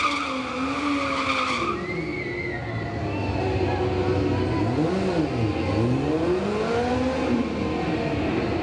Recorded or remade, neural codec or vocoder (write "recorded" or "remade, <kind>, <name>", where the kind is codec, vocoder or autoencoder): recorded